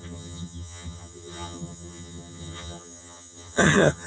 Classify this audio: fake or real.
fake